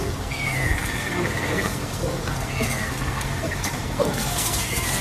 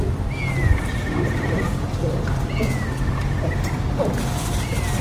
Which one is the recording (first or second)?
second